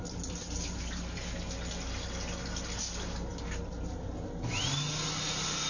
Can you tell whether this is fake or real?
real